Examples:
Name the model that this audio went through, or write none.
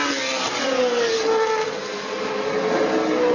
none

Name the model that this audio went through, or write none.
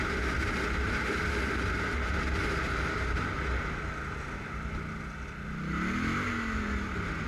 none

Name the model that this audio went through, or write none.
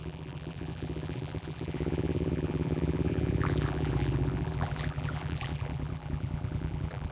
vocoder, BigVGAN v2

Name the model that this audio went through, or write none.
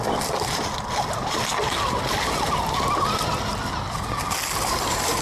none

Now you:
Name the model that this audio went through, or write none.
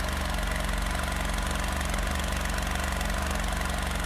none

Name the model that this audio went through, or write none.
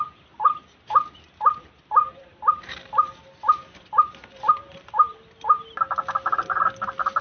none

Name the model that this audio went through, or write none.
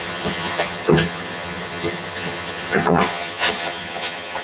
vocoder, HiFi-GAN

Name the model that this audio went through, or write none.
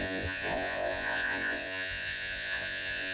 vocoder, Vocos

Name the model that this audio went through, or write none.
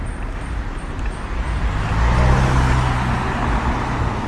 none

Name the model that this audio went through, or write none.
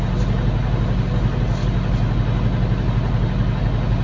none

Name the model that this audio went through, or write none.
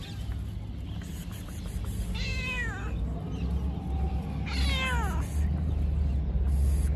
none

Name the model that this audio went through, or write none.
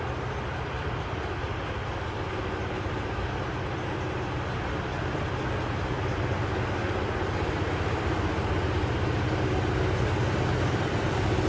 none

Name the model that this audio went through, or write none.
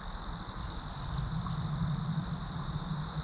none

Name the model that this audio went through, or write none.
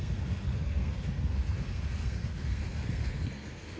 codec, SNAC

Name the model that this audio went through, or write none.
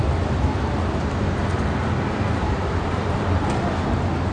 none